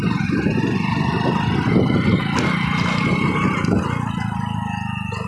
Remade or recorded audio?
recorded